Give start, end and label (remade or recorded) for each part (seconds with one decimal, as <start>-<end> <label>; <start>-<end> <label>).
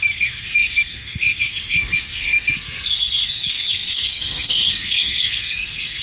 0.0-6.0 remade